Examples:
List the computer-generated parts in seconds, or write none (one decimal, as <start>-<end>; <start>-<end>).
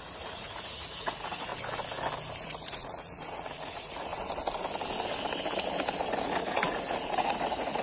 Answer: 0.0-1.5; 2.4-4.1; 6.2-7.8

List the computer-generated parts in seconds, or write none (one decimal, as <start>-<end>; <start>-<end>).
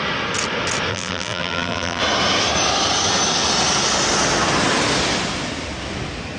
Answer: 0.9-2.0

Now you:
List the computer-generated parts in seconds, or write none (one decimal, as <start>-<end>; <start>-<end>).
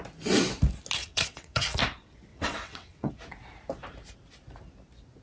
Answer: 1.0-1.8; 2.3-3.1